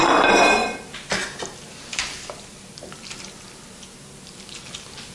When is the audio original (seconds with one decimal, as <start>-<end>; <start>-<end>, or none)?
0.0-5.1